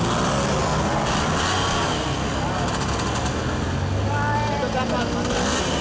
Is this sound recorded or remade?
recorded